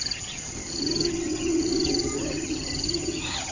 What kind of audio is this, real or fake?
fake